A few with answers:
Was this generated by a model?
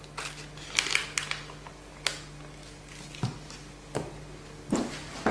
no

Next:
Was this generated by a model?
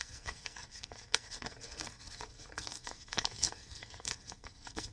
yes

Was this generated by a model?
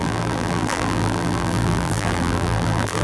yes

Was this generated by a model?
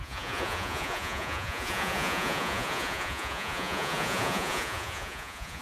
yes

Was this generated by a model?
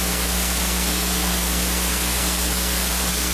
yes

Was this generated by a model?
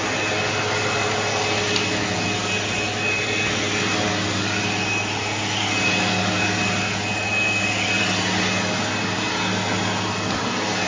no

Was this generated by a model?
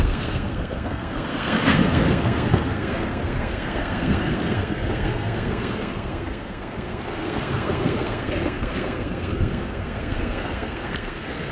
yes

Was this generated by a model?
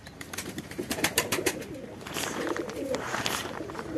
yes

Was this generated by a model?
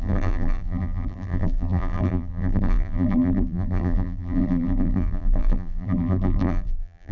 yes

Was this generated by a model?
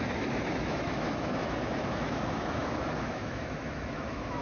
yes